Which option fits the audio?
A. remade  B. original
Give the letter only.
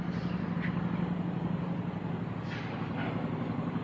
B